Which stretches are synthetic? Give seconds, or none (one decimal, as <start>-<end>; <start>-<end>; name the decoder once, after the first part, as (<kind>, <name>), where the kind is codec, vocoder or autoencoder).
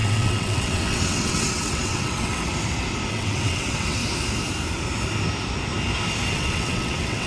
0.0-2.5 (vocoder, WaveNeXt); 3.1-4.0; 6.3-7.3